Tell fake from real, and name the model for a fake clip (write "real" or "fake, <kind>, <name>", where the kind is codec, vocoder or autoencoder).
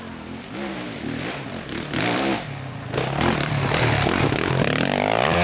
real